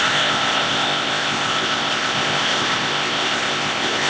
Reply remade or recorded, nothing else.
remade